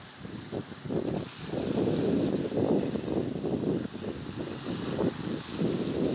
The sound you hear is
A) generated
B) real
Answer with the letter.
B